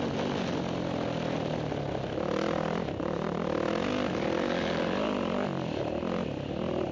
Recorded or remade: recorded